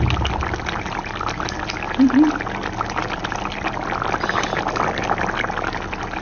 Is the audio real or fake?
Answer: real